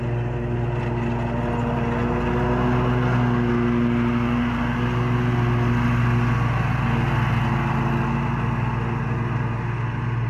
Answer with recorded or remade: recorded